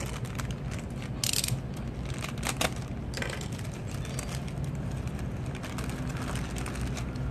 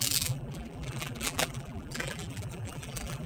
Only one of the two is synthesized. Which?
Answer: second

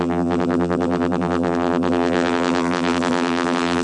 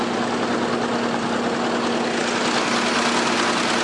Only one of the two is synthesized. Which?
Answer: first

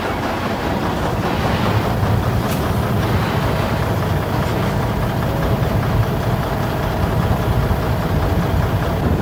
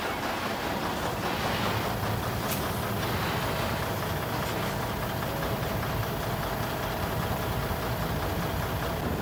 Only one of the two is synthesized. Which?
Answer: first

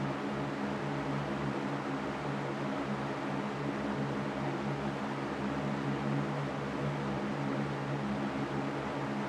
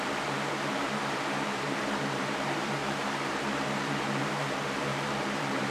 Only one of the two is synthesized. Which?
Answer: second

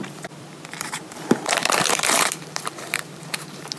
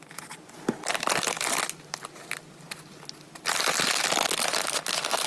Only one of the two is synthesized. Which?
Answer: first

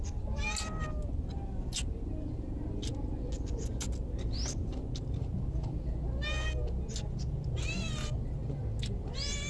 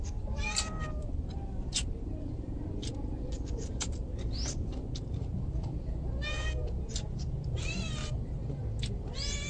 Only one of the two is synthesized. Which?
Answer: second